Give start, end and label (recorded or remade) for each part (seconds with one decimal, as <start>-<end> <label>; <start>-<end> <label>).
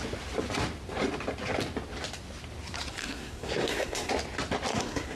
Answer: 0.0-3.0 recorded; 3.0-4.1 remade; 4.1-4.7 recorded; 4.7-5.2 remade